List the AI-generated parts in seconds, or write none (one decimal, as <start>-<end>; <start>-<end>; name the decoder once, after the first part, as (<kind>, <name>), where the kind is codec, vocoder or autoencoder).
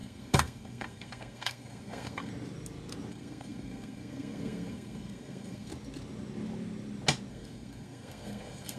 0.0-2.3 (codec, SNAC); 3.1-5.7; 7.3-8.8